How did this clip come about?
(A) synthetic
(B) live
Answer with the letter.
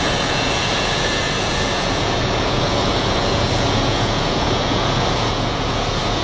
A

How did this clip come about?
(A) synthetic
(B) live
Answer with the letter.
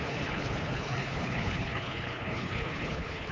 A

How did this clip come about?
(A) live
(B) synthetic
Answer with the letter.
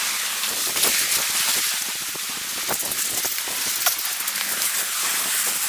A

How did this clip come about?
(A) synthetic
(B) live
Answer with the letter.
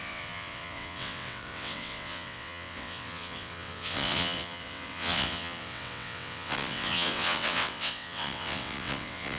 A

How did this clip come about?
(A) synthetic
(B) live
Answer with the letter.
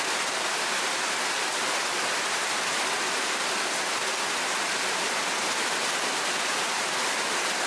B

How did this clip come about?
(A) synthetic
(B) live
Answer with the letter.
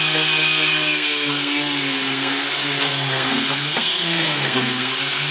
A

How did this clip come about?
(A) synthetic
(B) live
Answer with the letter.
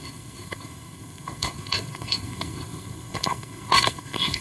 A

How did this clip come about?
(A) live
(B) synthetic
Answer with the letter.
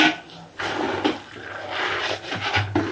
A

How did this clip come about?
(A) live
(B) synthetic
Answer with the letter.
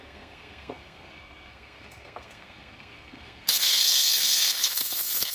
B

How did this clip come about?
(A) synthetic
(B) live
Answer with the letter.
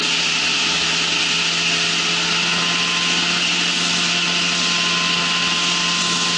B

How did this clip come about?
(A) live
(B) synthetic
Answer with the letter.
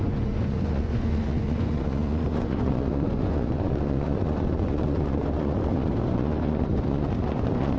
B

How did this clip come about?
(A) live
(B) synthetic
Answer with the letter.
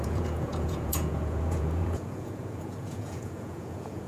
B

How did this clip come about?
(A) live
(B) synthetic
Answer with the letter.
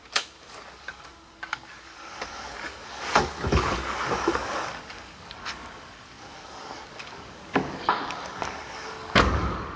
B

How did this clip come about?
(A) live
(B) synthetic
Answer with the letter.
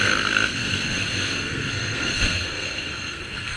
B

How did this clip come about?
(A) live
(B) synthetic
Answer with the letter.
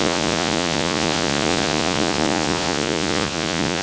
B